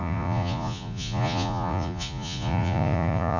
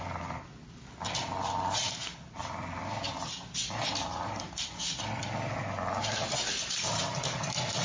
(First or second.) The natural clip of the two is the second